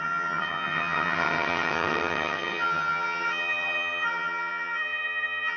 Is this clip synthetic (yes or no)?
yes